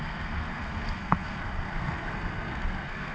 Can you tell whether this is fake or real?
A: fake